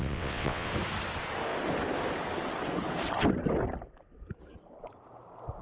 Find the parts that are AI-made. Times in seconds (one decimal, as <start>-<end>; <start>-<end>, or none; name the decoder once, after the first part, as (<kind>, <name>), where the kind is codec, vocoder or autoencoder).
0.0-0.7 (vocoder, WaveNeXt)

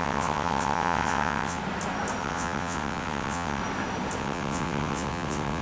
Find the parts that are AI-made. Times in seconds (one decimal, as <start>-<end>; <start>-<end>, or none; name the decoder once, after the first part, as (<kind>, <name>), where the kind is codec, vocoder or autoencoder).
0.0-1.6 (vocoder, WaveNeXt); 2.2-3.6; 4.2-5.6

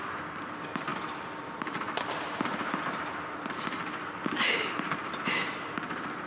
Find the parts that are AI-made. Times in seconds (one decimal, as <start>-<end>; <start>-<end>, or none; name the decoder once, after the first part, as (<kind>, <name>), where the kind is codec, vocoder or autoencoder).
none